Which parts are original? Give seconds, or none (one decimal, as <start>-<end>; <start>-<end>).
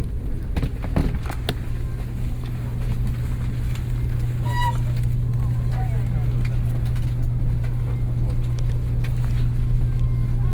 0.0-10.5